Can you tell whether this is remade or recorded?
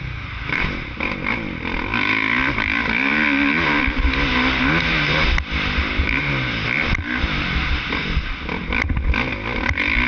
recorded